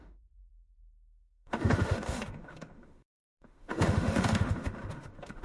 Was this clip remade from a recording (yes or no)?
yes